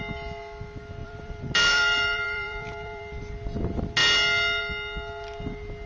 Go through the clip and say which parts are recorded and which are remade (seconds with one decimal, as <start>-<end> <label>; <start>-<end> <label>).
0.0-1.0 recorded; 1.0-3.2 remade; 3.2-5.9 recorded